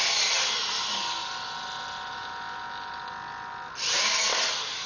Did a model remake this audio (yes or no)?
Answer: no